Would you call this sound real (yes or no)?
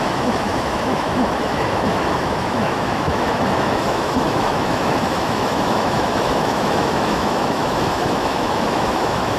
no